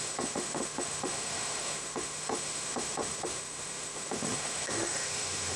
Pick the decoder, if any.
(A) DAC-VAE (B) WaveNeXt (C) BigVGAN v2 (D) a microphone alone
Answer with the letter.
A